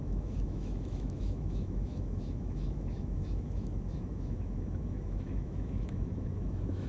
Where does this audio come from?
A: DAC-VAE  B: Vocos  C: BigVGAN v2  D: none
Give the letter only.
A